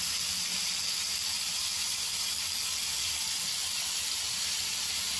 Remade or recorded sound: recorded